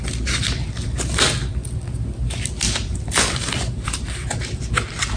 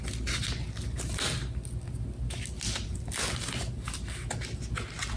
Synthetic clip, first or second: first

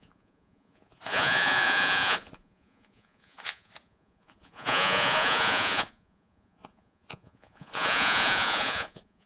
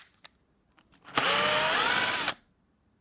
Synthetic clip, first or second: first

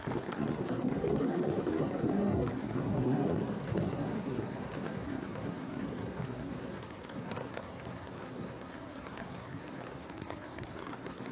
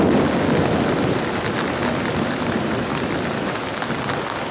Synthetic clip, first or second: first